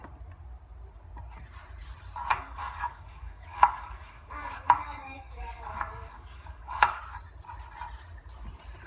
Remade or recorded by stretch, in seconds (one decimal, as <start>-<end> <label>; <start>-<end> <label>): 0.0-2.3 recorded; 2.3-7.0 remade; 7.0-8.9 recorded